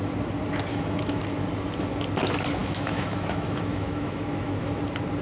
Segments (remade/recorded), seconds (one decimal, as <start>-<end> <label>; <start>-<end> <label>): 0.0-0.7 recorded; 0.7-1.2 remade; 1.2-2.6 recorded; 2.6-4.8 remade; 4.8-5.2 recorded